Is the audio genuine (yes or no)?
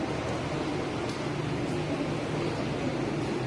yes